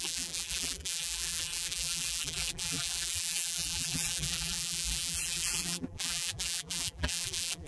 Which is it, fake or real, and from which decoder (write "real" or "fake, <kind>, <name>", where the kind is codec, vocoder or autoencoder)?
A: fake, vocoder, BigVGAN v2